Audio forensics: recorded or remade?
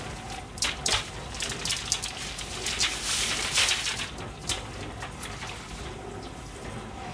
recorded